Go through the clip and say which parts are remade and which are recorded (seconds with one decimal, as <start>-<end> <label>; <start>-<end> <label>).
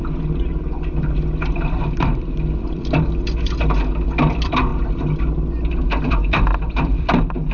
0.0-4.7 remade; 4.7-6.0 recorded; 6.0-7.5 remade